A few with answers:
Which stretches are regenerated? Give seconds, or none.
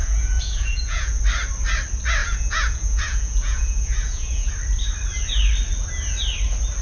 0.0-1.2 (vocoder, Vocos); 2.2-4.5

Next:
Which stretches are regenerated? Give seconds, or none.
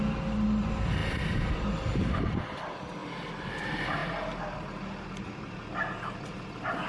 none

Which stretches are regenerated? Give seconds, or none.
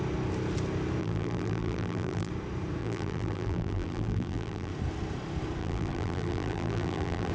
1.0-2.3 (vocoder, BigVGAN v2); 2.8-4.7; 5.6-7.3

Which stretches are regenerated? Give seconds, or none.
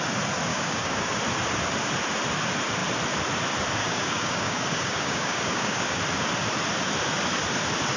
0.5-1.2 (codec, DAC); 3.8-6.0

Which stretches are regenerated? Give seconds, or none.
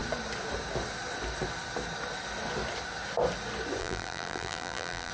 3.8-5.1 (vocoder, BigVGAN v2)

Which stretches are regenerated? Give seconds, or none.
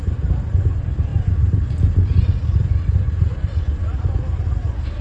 0.0-5.0 (vocoder, BigVGAN v2)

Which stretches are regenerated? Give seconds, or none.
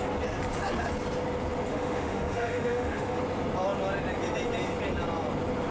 1.7-3.2 (autoencoder, DAC-VAE)